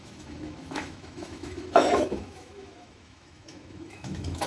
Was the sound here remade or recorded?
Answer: remade